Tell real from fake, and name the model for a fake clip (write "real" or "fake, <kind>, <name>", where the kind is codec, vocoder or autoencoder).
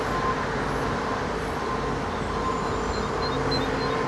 real